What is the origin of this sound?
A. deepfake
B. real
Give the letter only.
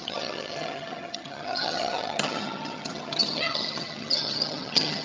A